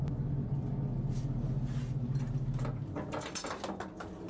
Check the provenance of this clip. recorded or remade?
recorded